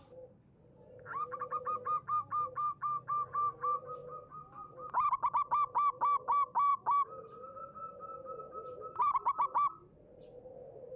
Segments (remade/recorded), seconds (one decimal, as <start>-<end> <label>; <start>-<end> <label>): 0.0-11.0 recorded